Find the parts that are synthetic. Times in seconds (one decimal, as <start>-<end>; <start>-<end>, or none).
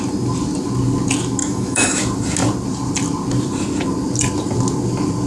1.4-2.0